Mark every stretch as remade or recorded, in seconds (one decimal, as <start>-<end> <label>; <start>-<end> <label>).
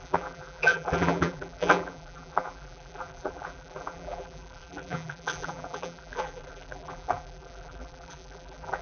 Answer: 0.0-8.8 remade